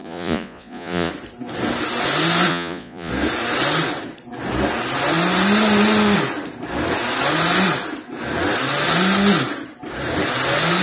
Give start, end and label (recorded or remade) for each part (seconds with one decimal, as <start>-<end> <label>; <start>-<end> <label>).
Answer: 0.0-1.1 remade; 1.1-2.5 recorded; 2.5-3.1 remade; 3.1-10.8 recorded